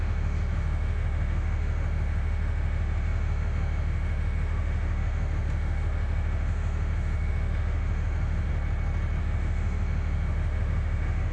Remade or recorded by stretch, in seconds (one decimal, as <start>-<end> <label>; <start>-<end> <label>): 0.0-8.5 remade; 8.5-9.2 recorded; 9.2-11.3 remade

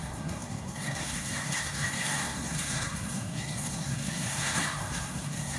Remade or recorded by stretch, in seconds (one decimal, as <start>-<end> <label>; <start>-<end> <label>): 0.0-5.6 remade

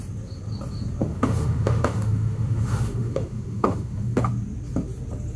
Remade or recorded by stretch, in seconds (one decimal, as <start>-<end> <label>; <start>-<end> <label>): 0.0-1.0 recorded; 1.0-4.2 remade; 4.2-5.4 recorded

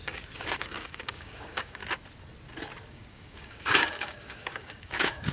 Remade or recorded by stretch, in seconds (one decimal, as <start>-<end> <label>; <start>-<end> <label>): 0.0-1.8 remade; 1.8-2.9 recorded; 2.9-5.3 remade